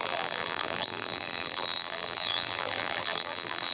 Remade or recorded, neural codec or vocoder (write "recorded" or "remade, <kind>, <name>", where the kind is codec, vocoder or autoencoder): remade, vocoder, BigVGAN v2